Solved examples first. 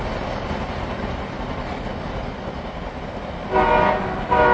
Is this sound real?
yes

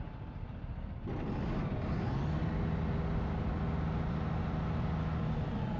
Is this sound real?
yes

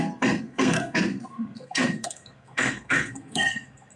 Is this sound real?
no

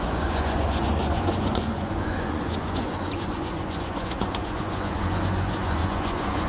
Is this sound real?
no